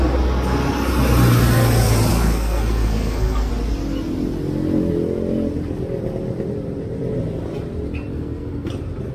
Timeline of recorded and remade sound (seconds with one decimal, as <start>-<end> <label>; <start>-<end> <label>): 0.0-2.1 recorded; 2.1-3.5 remade; 3.5-8.1 recorded; 8.1-8.7 remade; 8.7-9.1 recorded